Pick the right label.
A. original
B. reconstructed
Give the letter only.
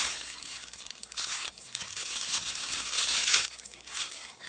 B